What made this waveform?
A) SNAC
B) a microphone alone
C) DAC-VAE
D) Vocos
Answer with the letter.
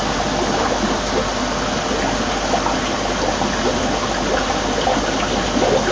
B